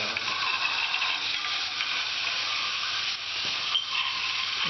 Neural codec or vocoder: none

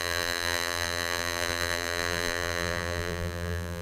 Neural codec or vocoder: vocoder, BigVGAN v2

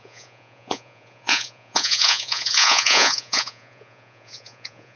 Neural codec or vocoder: vocoder, Vocos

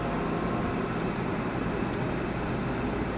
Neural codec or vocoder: none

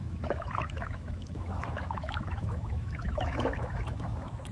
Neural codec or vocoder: autoencoder, DAC-VAE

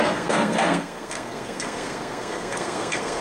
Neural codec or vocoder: codec, SNAC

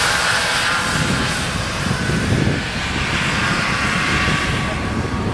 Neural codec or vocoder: vocoder, BigVGAN v2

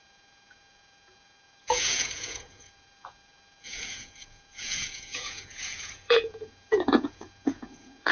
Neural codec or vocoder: vocoder, Vocos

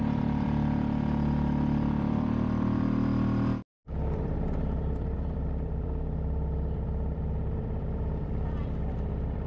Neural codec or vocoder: vocoder, BigVGAN v2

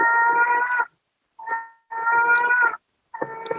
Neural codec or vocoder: none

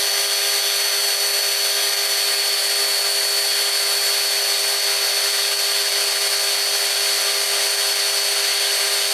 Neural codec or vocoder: none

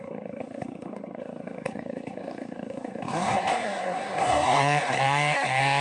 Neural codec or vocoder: codec, SNAC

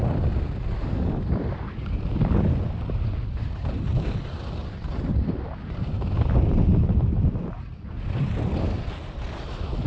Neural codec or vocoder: none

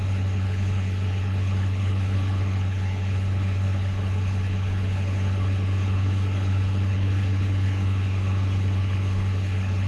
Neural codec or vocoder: codec, HILCodec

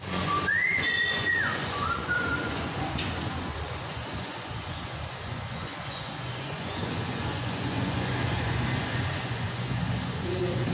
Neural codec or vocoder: vocoder, Vocos